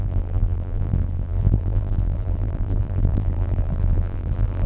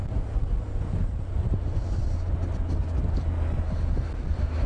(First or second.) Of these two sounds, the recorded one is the second